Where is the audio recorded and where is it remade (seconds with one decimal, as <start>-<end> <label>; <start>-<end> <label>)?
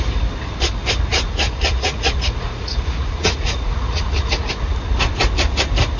0.0-1.1 recorded; 1.1-4.7 remade; 4.7-6.0 recorded